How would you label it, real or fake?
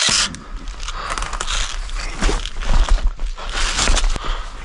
real